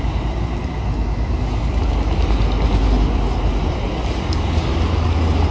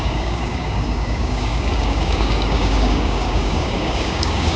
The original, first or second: first